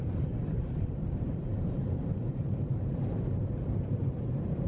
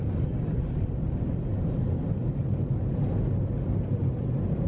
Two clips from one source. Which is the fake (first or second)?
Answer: first